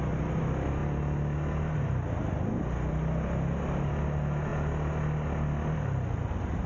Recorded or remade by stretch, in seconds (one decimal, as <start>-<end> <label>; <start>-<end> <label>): 0.0-6.7 recorded